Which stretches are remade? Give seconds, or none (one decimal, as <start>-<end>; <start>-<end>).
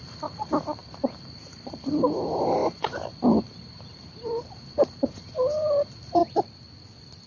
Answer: 0.0-6.2